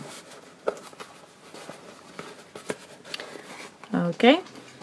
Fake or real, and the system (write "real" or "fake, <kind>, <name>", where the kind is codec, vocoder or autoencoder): real